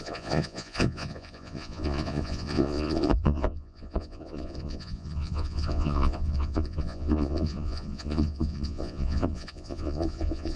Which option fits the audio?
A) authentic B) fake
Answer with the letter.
B